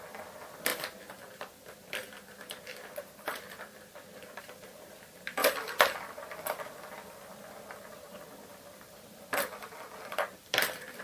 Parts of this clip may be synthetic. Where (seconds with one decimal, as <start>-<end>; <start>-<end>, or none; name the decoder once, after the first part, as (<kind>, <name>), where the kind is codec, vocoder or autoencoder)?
5.4-7.3 (vocoder, BigVGAN v2); 8.5-11.0